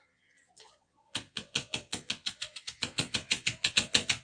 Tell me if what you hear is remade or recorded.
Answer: remade